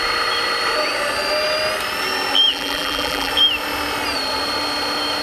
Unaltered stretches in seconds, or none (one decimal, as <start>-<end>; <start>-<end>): 0.0-2.5; 3.3-5.2